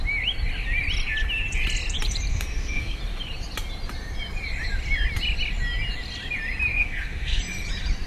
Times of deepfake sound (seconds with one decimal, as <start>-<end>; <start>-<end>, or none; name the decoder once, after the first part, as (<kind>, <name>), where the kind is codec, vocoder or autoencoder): 2.3-3.0 (codec, SNAC); 6.8-7.4